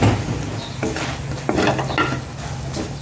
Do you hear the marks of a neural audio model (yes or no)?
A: no